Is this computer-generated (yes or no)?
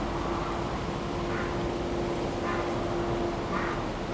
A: no